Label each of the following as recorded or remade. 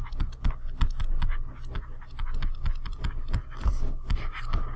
recorded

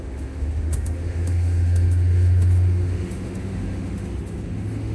remade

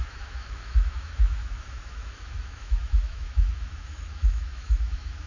remade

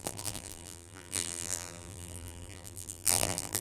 remade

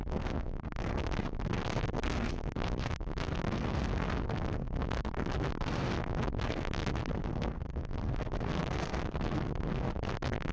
remade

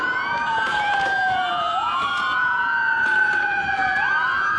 remade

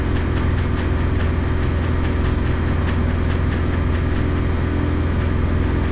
recorded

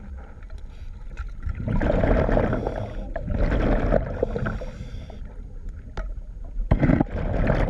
recorded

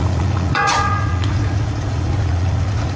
remade